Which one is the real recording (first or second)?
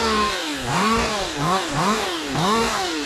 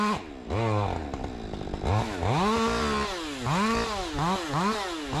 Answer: second